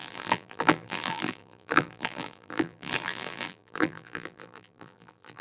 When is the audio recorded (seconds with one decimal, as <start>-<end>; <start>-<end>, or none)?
none